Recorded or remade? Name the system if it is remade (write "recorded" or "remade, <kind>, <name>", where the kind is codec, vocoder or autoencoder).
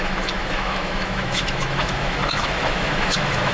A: remade, autoencoder, DAC-VAE